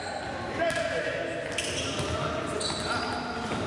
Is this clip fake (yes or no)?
no